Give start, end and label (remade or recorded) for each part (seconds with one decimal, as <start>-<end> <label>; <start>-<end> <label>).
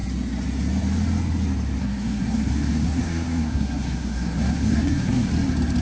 0.0-1.8 recorded; 1.8-5.3 remade; 5.3-5.8 recorded